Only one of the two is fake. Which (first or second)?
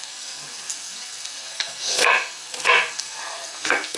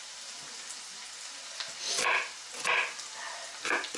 first